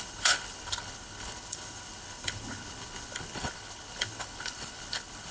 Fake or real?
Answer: fake